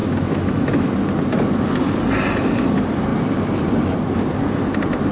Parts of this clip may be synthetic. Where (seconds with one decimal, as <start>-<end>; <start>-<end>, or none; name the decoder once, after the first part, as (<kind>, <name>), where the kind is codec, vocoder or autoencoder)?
0.0-0.9 (autoencoder, DAC-VAE)